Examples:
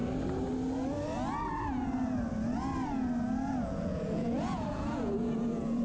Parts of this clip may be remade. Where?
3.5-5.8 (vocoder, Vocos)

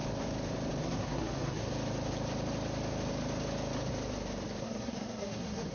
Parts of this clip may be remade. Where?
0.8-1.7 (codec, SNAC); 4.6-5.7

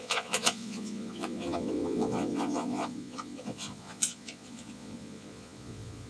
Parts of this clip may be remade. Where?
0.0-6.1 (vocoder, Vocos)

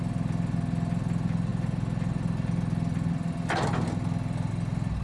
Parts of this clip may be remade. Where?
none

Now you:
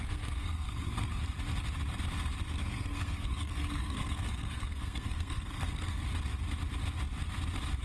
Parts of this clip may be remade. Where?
0.0-1.2 (codec, SNAC); 2.6-6.1

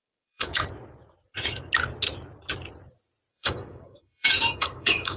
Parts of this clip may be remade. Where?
0.0-0.5 (codec, DAC); 3.3-5.2

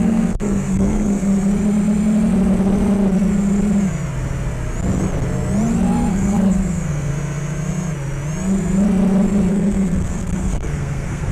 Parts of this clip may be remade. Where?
0.0-1.3 (codec, SNAC); 6.1-7.1; 9.5-11.3